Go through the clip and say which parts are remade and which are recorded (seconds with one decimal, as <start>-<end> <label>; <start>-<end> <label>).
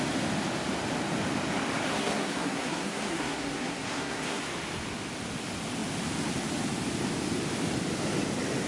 0.0-1.9 recorded; 1.9-4.4 remade; 4.4-8.7 recorded